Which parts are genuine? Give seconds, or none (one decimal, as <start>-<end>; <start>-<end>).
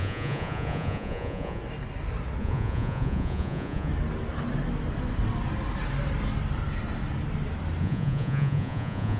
1.6-2.4; 3.9-7.8